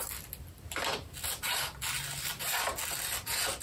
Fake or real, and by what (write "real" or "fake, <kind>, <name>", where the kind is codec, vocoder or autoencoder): real